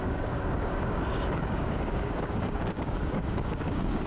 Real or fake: fake